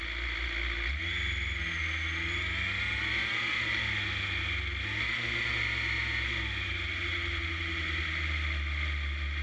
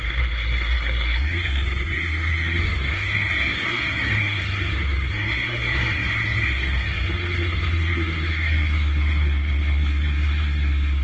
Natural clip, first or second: first